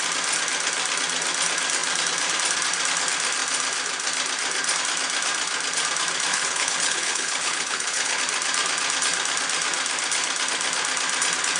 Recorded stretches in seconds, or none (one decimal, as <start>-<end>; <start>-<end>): 0.0-6.3; 8.2-11.6